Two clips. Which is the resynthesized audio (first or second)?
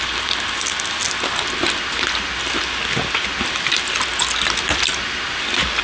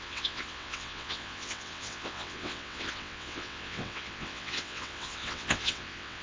second